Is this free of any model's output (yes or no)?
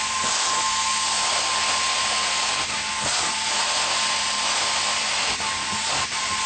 yes